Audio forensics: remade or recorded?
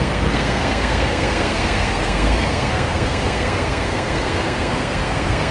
remade